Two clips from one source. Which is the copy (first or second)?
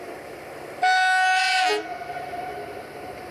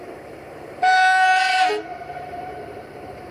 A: second